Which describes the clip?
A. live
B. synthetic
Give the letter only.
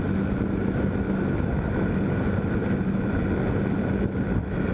A